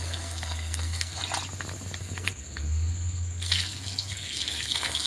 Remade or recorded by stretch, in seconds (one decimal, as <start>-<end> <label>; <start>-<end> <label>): 0.0-1.2 remade; 1.2-2.0 recorded; 2.0-5.1 remade